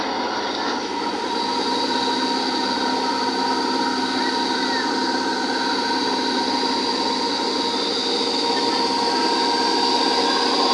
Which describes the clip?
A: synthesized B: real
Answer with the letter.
B